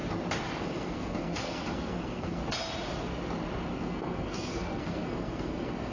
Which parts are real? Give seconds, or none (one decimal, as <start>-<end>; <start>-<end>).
0.0-0.6; 2.4-3.7